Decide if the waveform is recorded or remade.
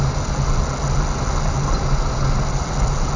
recorded